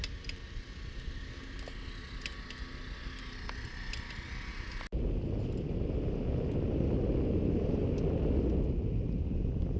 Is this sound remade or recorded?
recorded